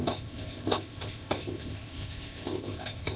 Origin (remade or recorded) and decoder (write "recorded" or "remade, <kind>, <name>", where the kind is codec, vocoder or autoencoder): remade, codec, ZipCodec